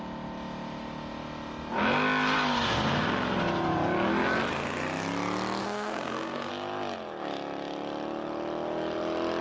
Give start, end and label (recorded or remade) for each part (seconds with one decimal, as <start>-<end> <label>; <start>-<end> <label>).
0.0-5.6 recorded; 5.6-6.5 remade; 6.5-9.4 recorded